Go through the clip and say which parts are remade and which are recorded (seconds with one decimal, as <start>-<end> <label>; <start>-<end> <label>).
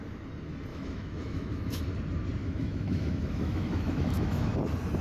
0.0-0.7 recorded; 0.7-1.8 remade; 1.8-2.4 recorded; 2.4-4.6 remade; 4.6-5.0 recorded